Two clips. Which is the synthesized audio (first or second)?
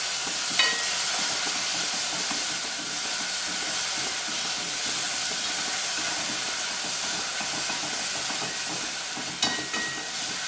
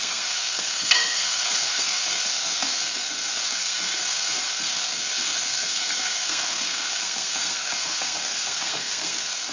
second